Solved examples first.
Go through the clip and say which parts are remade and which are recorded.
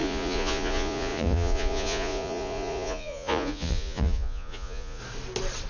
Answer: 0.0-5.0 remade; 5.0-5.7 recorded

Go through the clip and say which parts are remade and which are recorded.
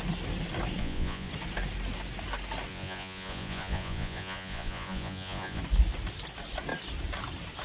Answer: 0.0-0.8 recorded; 0.8-1.3 remade; 1.3-2.7 recorded; 2.7-5.6 remade; 5.6-7.6 recorded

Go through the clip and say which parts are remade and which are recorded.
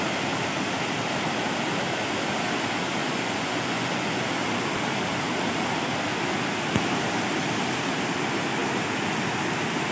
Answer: 0.0-3.0 recorded; 3.0-4.2 remade; 4.2-9.9 recorded